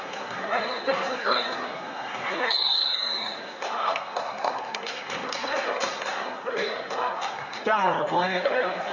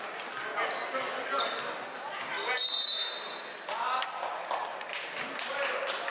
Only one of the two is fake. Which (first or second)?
first